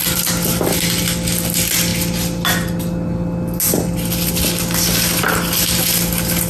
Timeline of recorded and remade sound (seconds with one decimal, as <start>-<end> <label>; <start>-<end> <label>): 0.0-6.5 recorded